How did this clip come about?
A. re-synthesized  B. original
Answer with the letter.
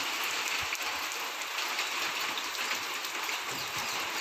B